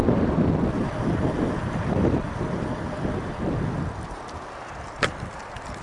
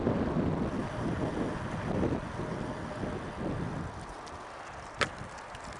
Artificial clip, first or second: first